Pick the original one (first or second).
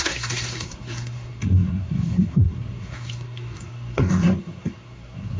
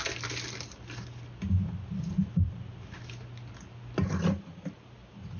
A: second